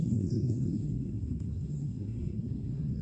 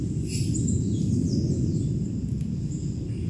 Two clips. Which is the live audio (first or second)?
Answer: second